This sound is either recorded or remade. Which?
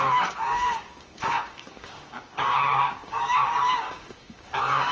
remade